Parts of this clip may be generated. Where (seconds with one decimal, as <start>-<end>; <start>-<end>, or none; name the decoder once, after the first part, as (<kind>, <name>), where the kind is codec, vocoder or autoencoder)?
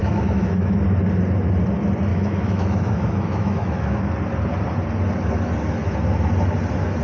0.0-0.8 (autoencoder, DAC-VAE); 2.1-4.0